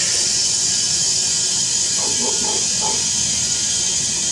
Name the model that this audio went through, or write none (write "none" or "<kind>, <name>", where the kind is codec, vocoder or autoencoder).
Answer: vocoder, Vocos